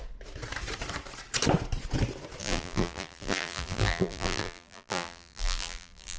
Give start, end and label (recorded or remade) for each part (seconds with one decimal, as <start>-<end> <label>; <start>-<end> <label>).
0.0-2.4 recorded; 2.4-6.2 remade